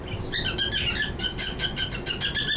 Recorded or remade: recorded